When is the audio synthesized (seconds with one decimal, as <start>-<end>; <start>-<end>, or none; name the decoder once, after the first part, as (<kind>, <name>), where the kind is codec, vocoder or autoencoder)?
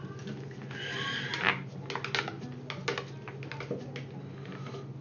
none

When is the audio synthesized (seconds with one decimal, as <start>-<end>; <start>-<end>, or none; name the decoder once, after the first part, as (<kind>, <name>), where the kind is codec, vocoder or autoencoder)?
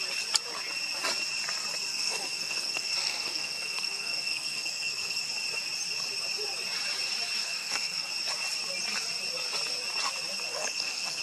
1.9-5.2 (codec, SNAC); 7.4-8.1; 10.5-11.2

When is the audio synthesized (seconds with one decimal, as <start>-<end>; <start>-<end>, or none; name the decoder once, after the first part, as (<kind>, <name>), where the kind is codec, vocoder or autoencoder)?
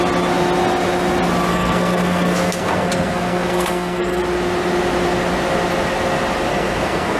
1.5-4.2 (codec, SNAC); 6.5-7.2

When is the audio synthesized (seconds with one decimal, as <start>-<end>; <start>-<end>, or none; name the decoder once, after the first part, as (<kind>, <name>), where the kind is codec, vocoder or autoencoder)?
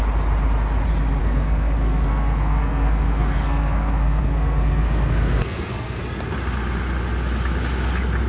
1.2-6.0 (codec, SNAC)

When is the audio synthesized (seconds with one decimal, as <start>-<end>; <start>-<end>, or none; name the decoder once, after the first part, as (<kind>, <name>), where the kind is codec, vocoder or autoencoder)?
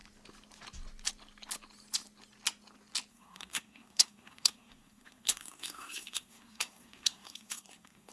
3.1-8.1 (codec, SNAC)